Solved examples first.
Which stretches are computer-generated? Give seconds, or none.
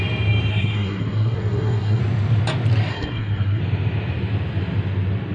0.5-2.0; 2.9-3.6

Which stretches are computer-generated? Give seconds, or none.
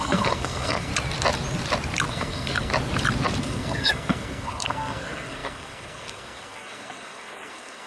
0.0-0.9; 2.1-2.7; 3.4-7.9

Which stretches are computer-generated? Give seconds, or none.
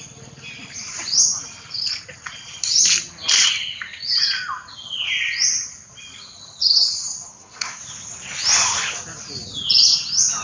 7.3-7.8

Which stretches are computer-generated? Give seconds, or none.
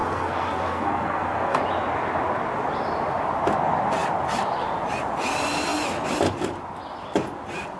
0.0-1.6